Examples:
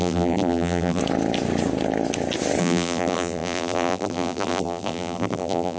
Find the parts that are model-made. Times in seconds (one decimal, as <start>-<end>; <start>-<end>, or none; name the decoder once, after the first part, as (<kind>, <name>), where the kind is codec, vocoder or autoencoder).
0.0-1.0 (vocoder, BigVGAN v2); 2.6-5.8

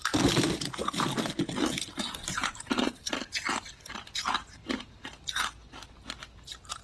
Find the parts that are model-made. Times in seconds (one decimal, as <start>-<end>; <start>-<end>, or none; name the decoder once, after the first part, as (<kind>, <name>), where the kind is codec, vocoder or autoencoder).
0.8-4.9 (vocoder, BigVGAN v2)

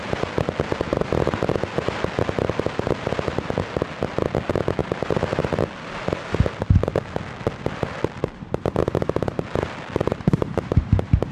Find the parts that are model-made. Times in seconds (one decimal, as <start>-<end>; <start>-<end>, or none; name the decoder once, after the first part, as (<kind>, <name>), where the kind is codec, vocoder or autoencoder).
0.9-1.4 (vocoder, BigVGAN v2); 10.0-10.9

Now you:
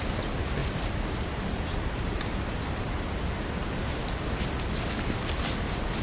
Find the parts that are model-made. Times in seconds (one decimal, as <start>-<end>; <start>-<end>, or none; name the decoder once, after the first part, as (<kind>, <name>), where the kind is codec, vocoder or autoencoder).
0.6-3.5 (vocoder, BigVGAN v2)

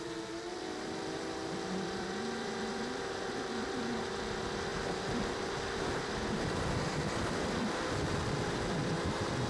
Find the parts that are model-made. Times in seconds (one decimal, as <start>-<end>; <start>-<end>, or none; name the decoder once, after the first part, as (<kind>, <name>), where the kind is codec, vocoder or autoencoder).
0.0-4.7 (vocoder, BigVGAN v2); 6.0-9.5

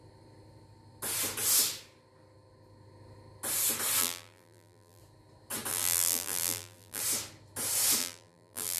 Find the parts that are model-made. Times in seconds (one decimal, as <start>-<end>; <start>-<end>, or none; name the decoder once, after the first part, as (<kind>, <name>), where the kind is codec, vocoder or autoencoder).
4.0-5.0 (vocoder, BigVGAN v2); 5.7-7.0; 8.0-8.8

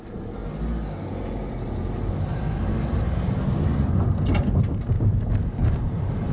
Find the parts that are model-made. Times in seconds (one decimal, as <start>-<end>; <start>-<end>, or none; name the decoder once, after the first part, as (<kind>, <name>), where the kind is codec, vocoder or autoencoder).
2.3-3.4 (vocoder, BigVGAN v2); 5.6-6.3

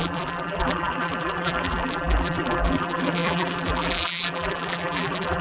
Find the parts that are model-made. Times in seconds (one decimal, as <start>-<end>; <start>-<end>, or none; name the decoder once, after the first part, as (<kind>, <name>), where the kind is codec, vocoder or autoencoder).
0.0-5.4 (vocoder, BigVGAN v2)